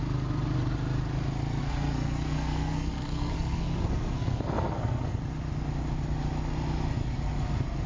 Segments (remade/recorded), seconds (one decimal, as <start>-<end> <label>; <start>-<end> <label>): 0.0-1.6 recorded; 1.6-5.2 remade; 5.2-7.9 recorded